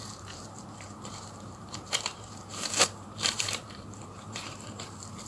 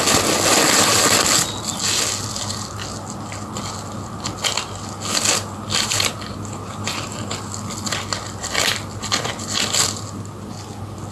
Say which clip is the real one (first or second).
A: second